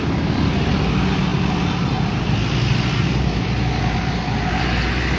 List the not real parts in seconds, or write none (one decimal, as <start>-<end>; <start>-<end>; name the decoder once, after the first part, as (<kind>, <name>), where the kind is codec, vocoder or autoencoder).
none